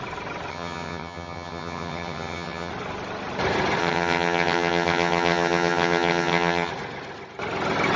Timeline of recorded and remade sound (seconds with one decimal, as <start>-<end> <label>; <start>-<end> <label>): 0.0-0.5 recorded; 0.5-2.7 remade; 2.7-3.8 recorded; 3.8-6.7 remade; 6.7-8.0 recorded